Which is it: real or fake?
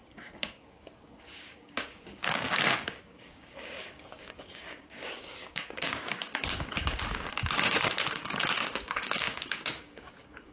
fake